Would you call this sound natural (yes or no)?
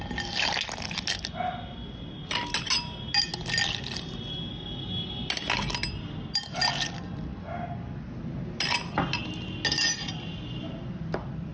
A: yes